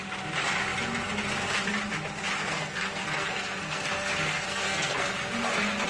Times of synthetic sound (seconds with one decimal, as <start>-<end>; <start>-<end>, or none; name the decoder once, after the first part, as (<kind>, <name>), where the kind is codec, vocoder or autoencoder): 2.4-5.3 (codec, SNAC)